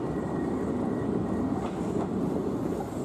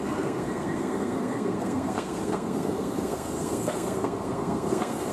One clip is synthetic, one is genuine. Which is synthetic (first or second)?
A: second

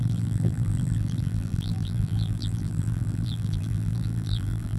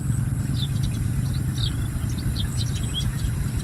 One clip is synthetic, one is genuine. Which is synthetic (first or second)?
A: first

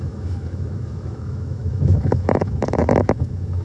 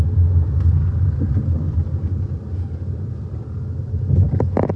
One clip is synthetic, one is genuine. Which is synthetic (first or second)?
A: first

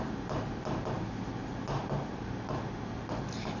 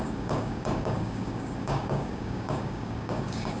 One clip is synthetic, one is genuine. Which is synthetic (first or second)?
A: second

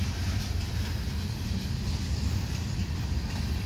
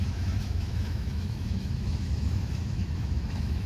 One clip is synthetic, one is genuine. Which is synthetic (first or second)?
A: second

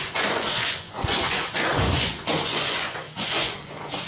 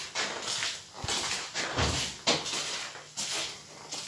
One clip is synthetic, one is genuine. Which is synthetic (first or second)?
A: first